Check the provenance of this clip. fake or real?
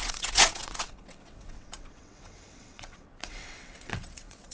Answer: fake